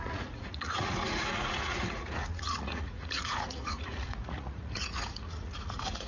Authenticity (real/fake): fake